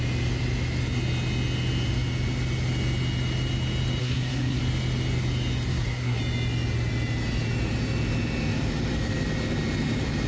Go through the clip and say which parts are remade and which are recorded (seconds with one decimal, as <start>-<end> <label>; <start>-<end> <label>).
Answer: 0.0-4.0 recorded; 4.0-4.6 remade; 4.6-5.7 recorded; 5.7-6.2 remade; 6.2-10.3 recorded